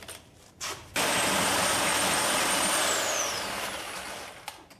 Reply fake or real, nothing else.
real